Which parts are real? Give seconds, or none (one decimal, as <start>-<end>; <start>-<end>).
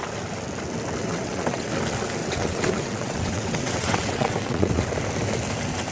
0.0-1.0; 1.7-2.2; 4.8-5.9